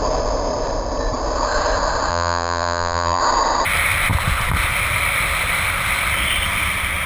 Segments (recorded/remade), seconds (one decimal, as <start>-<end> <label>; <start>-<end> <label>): 0.0-2.1 recorded; 2.1-3.2 remade; 3.2-7.1 recorded